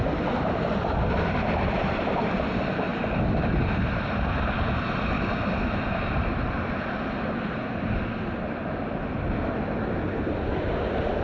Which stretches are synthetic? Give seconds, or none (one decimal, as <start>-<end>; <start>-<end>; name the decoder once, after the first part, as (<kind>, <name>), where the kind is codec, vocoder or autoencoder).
none